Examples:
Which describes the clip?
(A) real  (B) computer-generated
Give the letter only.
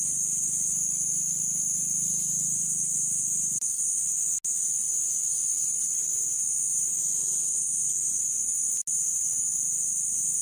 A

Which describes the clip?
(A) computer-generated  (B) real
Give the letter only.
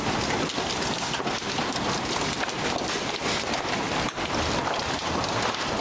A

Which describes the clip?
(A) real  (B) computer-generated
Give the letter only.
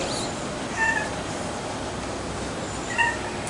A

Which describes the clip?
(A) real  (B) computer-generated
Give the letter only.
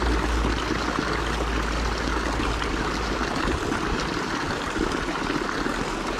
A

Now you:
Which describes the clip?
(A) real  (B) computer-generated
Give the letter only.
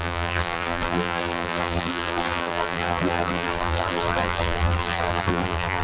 B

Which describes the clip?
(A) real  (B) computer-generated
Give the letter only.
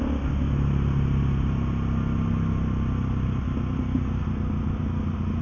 A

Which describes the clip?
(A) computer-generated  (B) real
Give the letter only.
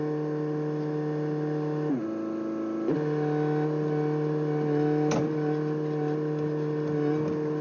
B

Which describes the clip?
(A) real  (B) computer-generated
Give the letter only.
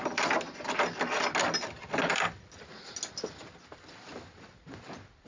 A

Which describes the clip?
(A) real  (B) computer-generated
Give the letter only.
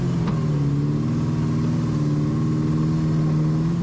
A